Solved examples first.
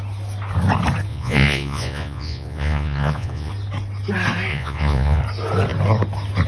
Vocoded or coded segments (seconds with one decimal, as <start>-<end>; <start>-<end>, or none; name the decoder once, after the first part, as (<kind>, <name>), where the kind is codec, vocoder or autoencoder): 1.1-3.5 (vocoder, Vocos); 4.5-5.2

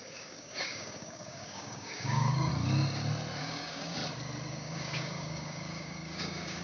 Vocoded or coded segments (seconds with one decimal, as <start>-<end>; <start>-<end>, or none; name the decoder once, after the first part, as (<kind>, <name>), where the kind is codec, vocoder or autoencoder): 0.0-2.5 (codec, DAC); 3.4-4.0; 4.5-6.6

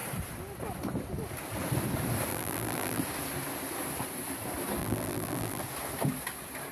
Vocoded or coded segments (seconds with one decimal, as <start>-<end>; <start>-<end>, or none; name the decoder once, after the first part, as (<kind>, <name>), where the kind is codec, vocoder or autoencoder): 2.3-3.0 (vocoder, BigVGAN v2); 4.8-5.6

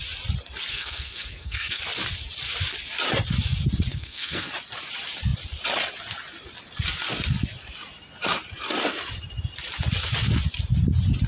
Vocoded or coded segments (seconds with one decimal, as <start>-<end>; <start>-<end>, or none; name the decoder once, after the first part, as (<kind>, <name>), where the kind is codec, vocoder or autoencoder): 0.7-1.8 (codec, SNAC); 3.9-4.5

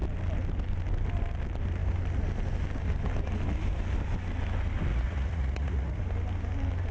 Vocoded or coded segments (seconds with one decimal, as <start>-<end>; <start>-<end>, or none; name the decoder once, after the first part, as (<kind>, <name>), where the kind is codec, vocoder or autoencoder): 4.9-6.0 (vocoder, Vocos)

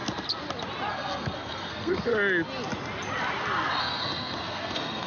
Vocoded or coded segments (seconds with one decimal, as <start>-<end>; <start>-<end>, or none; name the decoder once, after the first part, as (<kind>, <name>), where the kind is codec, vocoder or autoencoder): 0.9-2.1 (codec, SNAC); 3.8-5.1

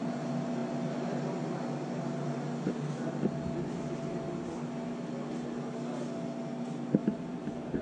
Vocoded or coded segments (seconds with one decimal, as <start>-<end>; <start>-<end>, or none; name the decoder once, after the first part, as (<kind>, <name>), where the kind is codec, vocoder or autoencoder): 7.0-7.8 (vocoder, BigVGAN v2)

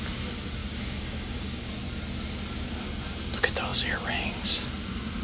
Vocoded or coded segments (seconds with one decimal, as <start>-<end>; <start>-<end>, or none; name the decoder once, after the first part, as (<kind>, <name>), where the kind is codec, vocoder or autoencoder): 0.6-1.7 (codec, DAC)